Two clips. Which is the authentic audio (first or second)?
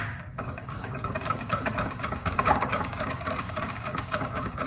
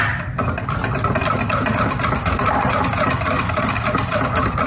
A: second